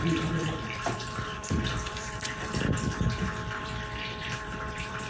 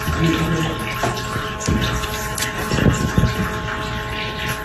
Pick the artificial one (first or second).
first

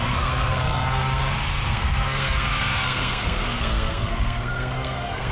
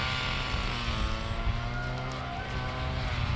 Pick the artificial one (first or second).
first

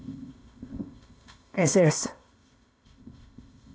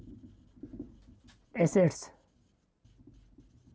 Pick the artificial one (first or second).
first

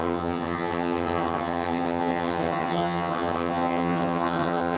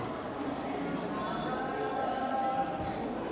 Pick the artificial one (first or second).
first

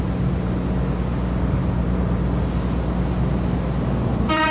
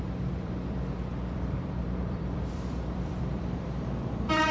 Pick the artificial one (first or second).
second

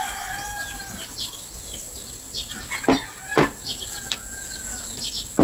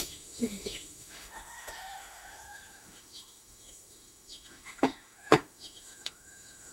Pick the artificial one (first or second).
second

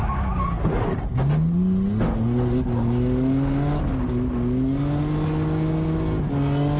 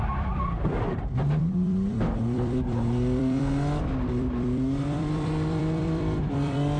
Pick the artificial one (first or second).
second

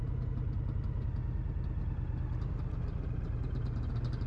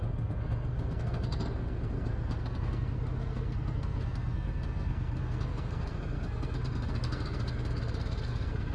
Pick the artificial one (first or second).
second